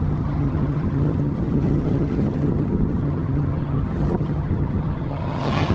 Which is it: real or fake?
fake